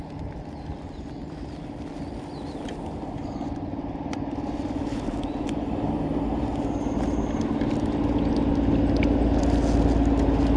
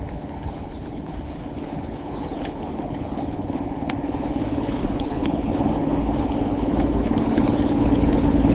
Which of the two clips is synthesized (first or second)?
second